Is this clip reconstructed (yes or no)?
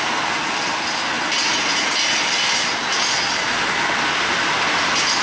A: no